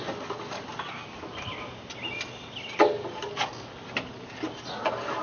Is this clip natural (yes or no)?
yes